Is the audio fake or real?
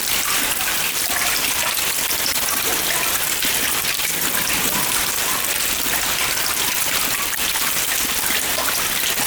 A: real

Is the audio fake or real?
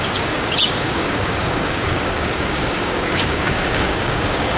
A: fake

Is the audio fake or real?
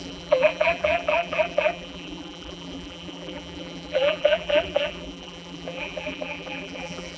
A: fake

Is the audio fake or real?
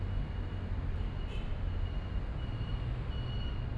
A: real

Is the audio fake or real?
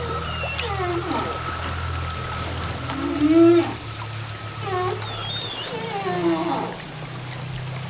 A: real